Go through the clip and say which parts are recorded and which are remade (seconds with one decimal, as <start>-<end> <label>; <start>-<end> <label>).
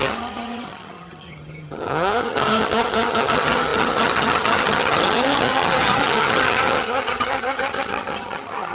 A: 0.0-8.7 remade